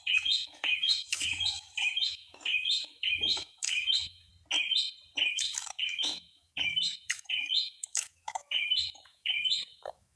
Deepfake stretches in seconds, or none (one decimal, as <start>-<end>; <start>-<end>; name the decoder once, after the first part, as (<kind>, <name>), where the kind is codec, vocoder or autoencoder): 0.0-4.3 (autoencoder, DAC-VAE); 5.3-10.2